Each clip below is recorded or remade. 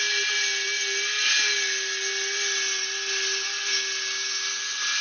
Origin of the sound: recorded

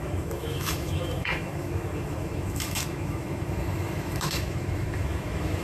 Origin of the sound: remade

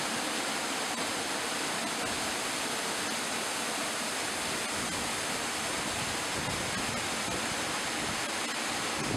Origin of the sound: recorded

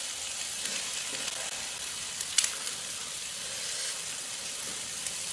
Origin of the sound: recorded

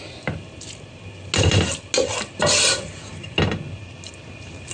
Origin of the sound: recorded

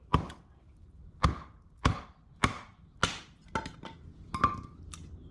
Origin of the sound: recorded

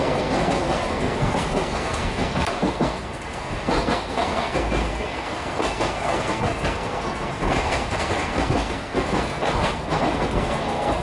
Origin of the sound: remade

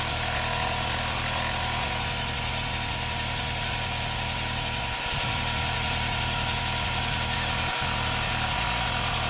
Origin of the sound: recorded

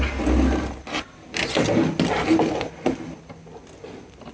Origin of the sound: recorded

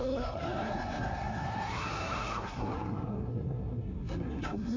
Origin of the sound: remade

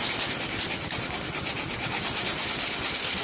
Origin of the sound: recorded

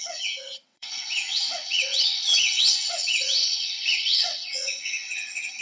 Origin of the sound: remade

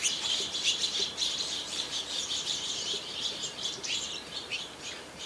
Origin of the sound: remade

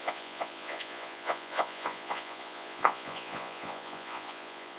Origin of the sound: remade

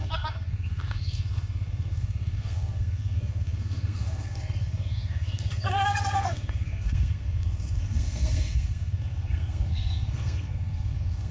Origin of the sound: remade